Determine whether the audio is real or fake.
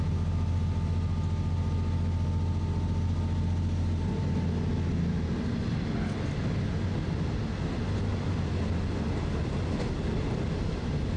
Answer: real